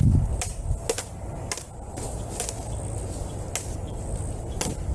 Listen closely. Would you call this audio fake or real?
real